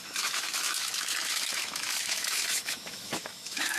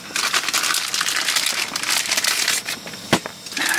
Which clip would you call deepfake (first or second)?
first